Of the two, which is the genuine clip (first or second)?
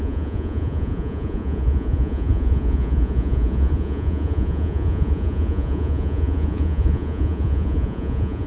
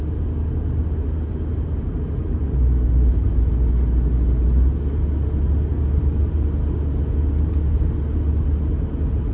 second